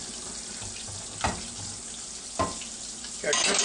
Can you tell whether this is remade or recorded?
recorded